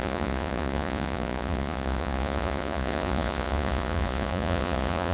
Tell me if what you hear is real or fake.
fake